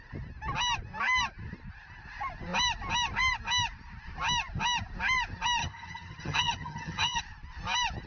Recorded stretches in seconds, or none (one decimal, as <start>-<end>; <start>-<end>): 0.0-5.6; 7.2-8.1